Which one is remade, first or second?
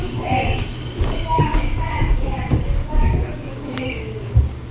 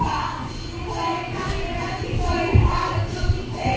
first